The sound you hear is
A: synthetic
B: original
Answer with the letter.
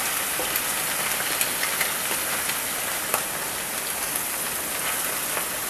B